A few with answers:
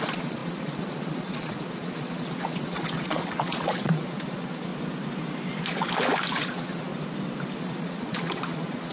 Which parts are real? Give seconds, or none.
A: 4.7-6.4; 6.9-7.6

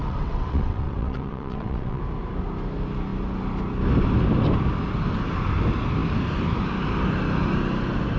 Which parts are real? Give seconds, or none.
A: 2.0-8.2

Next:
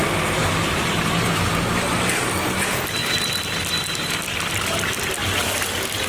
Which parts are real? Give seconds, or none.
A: 0.0-6.1